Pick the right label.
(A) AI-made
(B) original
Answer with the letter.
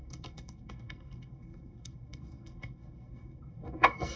A